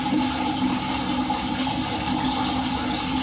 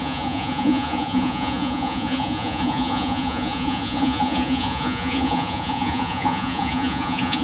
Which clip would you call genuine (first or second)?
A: first